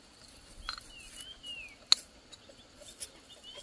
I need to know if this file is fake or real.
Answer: real